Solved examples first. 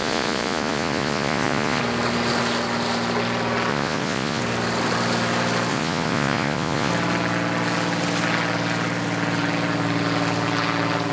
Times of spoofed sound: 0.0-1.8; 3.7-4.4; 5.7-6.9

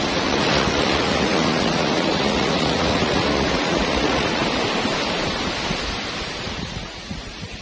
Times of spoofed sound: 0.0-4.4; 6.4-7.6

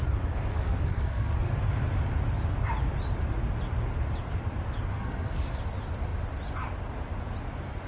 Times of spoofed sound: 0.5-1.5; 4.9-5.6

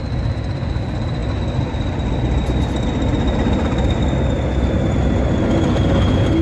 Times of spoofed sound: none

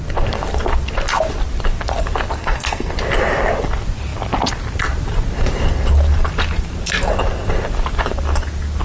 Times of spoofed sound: 2.4-2.9